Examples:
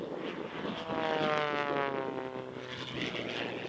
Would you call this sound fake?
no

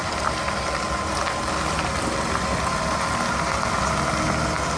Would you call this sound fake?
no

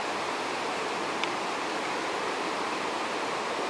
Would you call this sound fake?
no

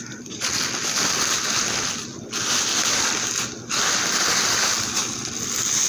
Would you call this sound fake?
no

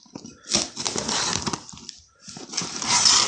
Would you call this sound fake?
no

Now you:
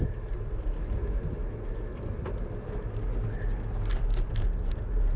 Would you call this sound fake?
no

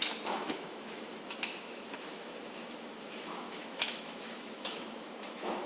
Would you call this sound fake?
yes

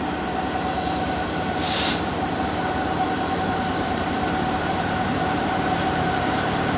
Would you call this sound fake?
yes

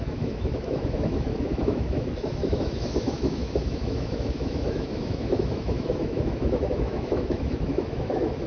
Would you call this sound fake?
yes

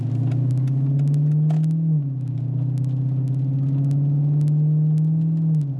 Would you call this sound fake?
no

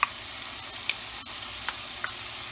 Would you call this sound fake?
no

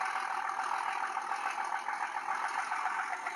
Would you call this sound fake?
no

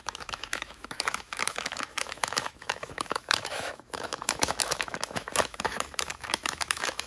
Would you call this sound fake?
yes